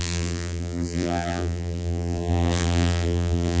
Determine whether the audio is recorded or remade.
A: remade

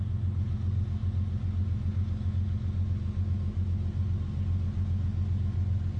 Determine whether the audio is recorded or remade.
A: recorded